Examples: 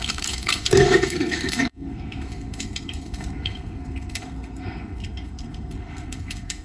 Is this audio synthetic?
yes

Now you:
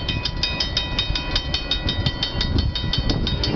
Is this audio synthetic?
no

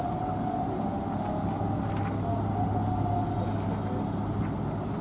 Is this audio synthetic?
no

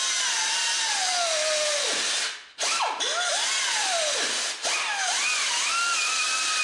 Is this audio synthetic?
no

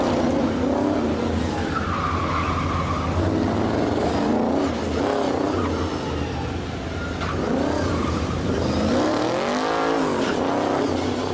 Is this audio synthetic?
no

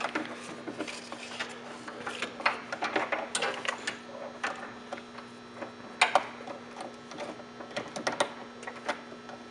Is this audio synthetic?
no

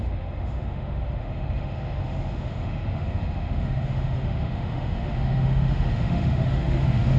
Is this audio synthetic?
yes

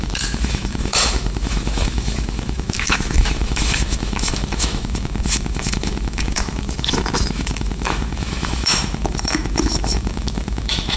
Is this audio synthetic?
yes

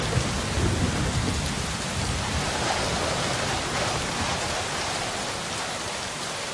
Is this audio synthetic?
no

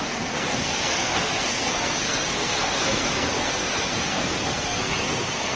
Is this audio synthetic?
yes